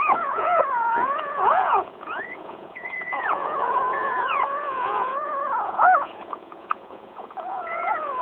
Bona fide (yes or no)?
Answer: no